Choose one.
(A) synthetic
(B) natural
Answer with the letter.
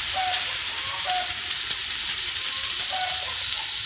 B